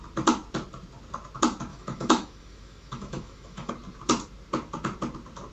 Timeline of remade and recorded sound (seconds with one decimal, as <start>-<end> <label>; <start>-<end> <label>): 0.0-1.7 recorded; 1.7-3.7 remade; 3.7-5.5 recorded